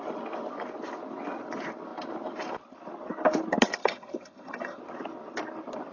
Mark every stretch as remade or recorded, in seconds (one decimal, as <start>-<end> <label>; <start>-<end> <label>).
0.0-3.8 recorded; 3.8-4.8 remade; 4.8-5.9 recorded